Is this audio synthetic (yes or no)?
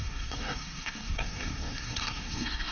yes